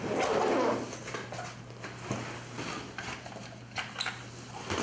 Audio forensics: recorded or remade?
recorded